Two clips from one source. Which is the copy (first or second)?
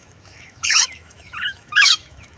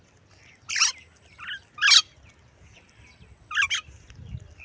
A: first